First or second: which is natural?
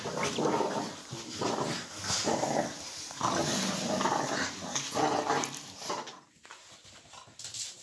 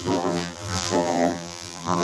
first